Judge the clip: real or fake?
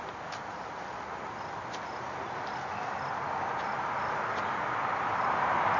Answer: real